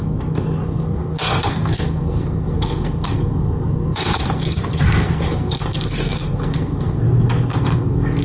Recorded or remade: remade